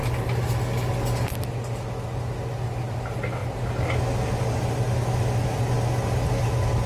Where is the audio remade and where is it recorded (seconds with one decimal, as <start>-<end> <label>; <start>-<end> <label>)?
0.0-6.9 recorded